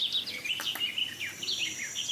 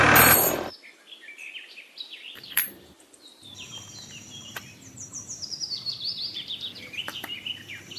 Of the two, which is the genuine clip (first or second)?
first